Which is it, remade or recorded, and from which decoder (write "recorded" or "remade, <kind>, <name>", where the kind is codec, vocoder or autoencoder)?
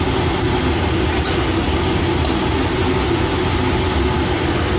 recorded